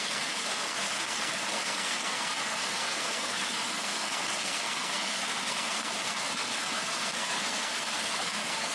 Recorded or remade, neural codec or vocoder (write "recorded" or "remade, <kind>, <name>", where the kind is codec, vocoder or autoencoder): remade, codec, SNAC